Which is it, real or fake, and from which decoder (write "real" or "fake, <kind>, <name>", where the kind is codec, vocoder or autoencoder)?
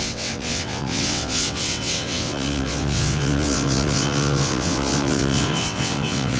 fake, vocoder, WaveNeXt